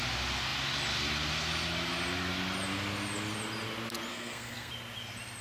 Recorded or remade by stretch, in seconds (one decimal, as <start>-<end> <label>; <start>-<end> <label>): 0.0-4.1 recorded; 4.1-4.7 remade; 4.7-5.4 recorded